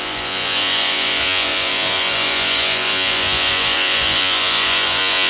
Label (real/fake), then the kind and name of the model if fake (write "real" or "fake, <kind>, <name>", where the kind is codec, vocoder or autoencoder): fake, vocoder, Vocos